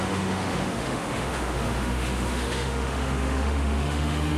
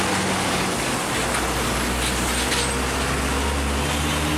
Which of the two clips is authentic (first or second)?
second